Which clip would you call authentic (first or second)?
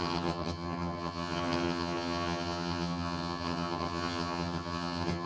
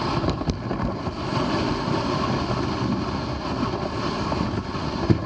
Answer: second